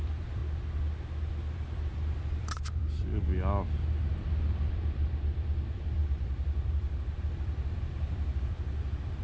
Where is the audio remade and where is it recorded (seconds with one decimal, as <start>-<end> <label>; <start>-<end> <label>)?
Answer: 0.0-0.4 remade; 0.4-1.3 recorded; 1.3-3.3 remade; 3.3-4.1 recorded; 4.1-9.2 remade